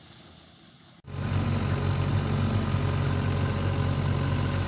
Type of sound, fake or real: real